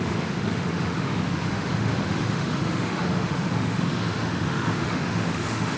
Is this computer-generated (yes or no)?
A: yes